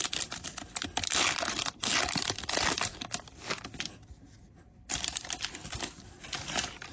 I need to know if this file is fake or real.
real